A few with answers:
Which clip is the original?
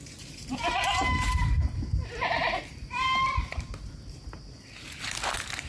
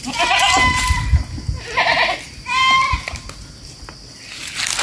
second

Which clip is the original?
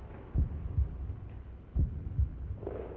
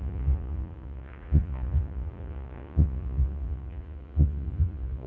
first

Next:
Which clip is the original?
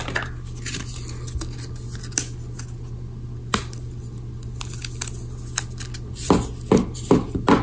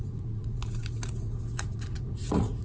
first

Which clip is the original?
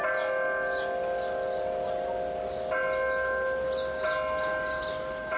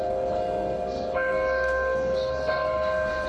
first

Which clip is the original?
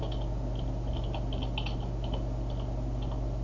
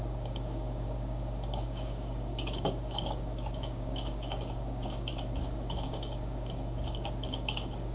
first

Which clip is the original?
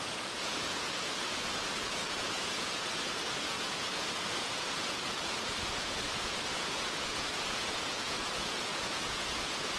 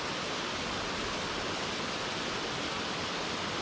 second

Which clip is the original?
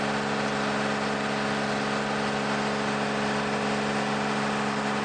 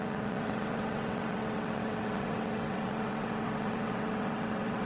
first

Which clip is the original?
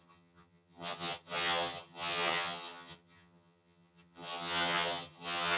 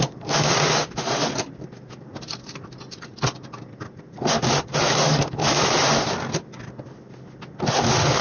second